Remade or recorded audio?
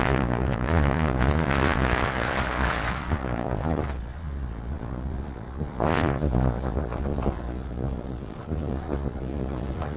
remade